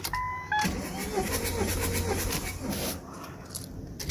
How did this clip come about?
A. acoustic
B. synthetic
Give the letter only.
A